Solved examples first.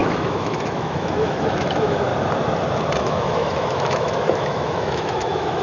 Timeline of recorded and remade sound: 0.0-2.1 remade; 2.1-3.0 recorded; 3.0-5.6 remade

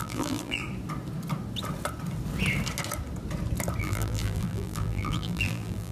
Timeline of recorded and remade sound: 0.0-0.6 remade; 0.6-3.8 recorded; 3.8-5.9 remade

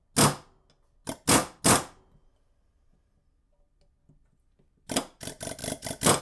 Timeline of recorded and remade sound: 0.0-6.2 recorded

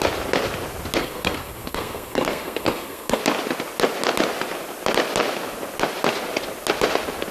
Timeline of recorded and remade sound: 0.0-1.0 recorded; 1.0-3.2 remade; 3.2-7.3 recorded